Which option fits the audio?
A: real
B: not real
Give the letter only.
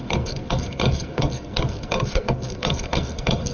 B